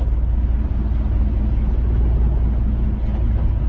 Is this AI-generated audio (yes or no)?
no